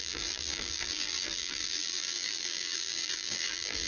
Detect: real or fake fake